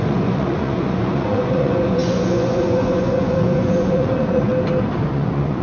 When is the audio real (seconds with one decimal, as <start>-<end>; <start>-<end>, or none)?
4.5-5.1